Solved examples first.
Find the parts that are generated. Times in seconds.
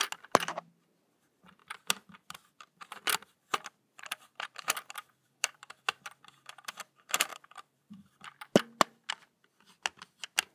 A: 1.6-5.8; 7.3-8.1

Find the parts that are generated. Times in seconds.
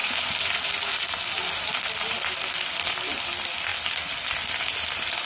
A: none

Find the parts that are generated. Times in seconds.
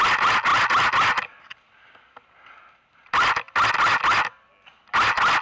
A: none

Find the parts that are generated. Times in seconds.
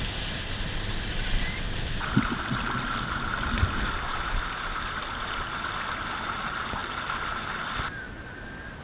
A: none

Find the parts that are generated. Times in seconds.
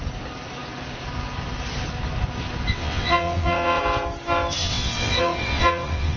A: 2.7-3.8; 4.6-6.2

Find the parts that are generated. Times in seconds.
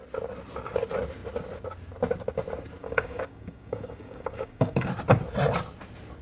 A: 2.8-4.9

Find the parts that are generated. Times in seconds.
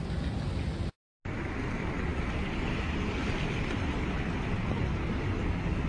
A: none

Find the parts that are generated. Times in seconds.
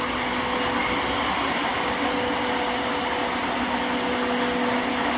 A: none